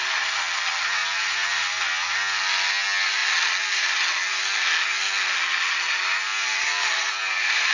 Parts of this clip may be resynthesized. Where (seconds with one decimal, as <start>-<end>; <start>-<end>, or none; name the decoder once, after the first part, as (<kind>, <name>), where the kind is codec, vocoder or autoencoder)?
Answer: 1.0-1.5 (vocoder, BigVGAN v2); 6.3-7.7